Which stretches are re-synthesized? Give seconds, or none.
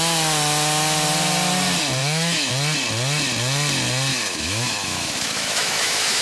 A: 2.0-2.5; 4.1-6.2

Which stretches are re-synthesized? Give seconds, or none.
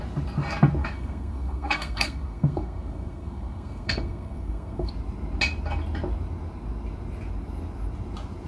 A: 0.8-4.9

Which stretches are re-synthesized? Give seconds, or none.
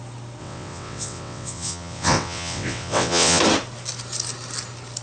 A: 0.4-3.4